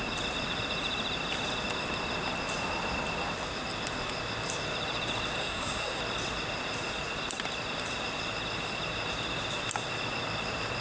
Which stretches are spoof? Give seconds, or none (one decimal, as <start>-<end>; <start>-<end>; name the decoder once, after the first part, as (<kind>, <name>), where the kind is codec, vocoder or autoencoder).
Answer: 5.4-6.0 (codec, SNAC)